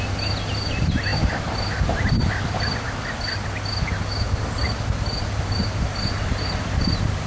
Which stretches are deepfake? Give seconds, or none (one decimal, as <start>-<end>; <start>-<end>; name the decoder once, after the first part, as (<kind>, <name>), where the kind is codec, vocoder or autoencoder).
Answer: none